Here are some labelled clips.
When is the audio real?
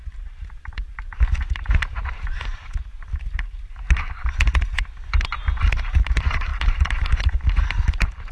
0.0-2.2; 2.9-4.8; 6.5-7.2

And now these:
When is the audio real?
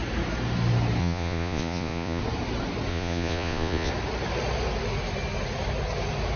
0.0-1.0; 2.2-2.9; 3.9-6.4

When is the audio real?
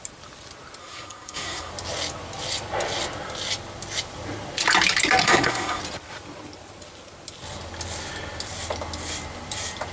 0.0-0.8; 1.7-5.2; 5.8-9.9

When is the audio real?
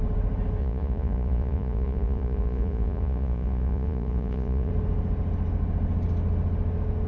0.0-0.6; 4.7-7.1